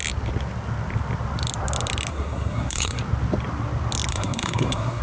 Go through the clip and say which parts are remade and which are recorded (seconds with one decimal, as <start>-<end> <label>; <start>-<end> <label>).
0.0-2.1 recorded; 2.1-3.0 remade; 3.0-4.1 recorded; 4.1-5.0 remade